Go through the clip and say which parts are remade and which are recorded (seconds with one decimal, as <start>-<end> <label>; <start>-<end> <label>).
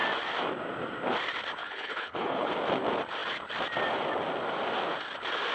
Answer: 0.0-1.6 recorded; 1.6-2.5 remade; 2.5-5.5 recorded